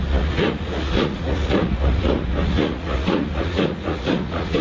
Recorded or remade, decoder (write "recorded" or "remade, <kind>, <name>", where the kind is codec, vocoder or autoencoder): remade, vocoder, Vocos